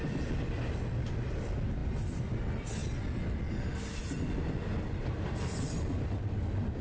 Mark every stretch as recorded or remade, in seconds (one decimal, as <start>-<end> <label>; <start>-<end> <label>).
0.0-2.8 remade; 2.8-3.5 recorded; 3.5-6.8 remade